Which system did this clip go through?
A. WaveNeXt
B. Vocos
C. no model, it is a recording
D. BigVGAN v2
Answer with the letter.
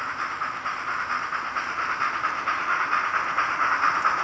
C